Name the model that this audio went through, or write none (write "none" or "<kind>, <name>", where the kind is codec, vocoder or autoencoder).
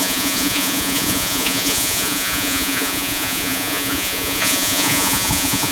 vocoder, Vocos